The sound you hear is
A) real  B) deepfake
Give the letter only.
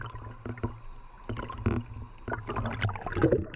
A